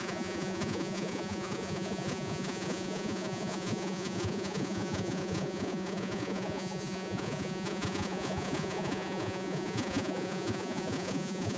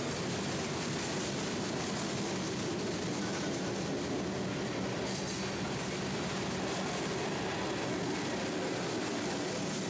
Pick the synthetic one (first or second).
first